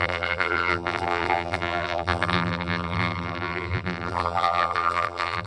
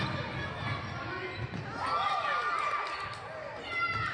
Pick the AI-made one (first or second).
first